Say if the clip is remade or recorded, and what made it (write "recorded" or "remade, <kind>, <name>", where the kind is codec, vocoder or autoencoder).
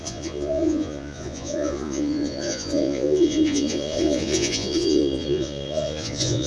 remade, vocoder, Vocos